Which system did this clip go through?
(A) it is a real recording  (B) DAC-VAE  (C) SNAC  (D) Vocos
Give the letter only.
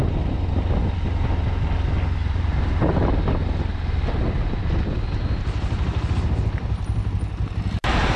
A